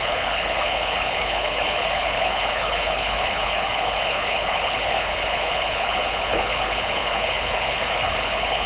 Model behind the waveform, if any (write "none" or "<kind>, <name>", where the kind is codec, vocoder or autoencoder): codec, HILCodec